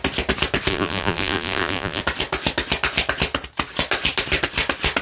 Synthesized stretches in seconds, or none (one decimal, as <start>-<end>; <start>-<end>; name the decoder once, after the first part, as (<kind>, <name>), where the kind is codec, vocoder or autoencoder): 0.7-2.0 (vocoder, BigVGAN v2)